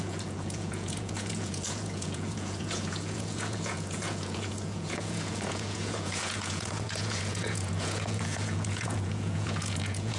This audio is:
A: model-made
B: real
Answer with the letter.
A